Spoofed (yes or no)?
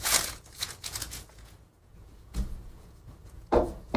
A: yes